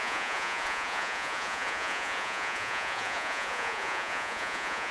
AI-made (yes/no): yes